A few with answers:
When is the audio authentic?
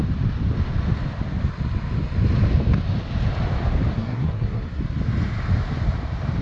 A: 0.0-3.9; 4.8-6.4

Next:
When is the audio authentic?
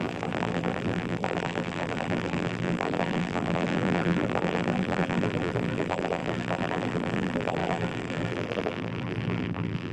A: none